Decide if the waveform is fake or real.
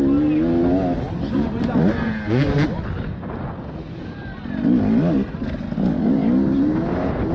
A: real